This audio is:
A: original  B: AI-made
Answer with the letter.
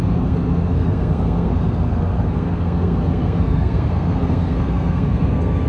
B